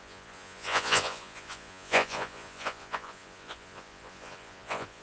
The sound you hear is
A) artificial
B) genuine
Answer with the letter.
A